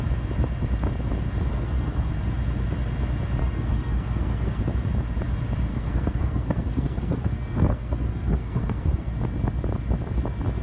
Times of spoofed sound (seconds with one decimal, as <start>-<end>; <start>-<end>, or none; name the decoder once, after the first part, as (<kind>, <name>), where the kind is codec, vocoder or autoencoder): 1.5-2.1 (codec, SNAC); 3.4-4.6; 5.7-9.1